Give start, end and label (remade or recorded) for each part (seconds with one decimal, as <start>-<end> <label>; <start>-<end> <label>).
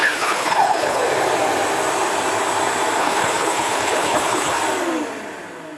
0.0-1.0 remade; 1.0-3.0 recorded; 3.0-4.6 remade; 4.6-5.8 recorded